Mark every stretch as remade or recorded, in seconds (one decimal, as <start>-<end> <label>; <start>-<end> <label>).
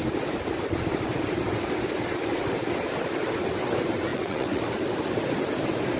0.0-4.1 recorded; 4.1-4.6 remade; 4.6-6.0 recorded